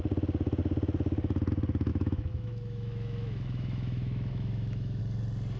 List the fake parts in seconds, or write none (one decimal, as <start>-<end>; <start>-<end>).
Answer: 1.9-5.0